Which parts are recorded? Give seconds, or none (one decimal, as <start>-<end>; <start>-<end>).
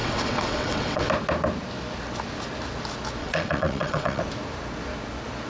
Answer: 1.1-3.2; 4.2-5.5